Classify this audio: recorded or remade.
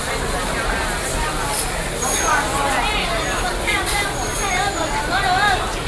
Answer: recorded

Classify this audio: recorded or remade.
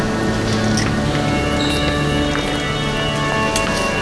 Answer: recorded